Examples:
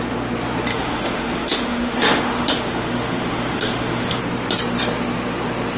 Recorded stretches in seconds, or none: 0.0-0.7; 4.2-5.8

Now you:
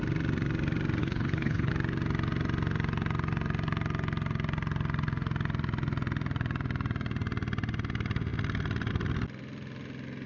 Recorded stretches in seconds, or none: 0.0-1.0; 1.7-10.3